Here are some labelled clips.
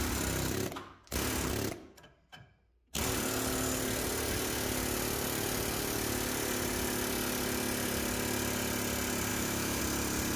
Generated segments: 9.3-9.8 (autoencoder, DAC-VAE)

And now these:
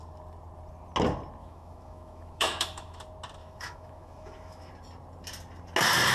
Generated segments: 1.4-3.0 (autoencoder, DAC-VAE); 3.4-4.7

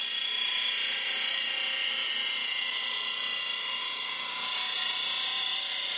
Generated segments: none

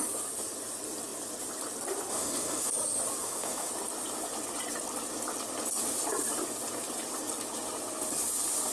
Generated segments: 2.1-2.7 (autoencoder, DAC-VAE); 3.2-3.7

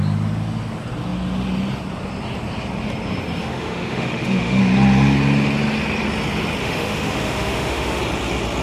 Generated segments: 3.4-4.6 (autoencoder, DAC-VAE); 6.6-8.0

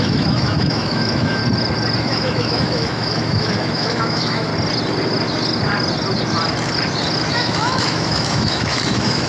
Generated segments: 0.0-1.4 (autoencoder, DAC-VAE); 2.0-4.5; 7.3-9.3

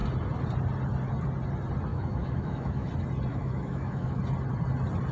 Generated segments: 1.9-2.9 (autoencoder, DAC-VAE); 3.3-4.2

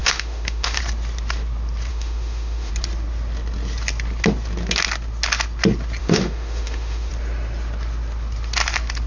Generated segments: 0.0-0.8 (autoencoder, DAC-VAE); 1.9-2.7; 6.0-7.1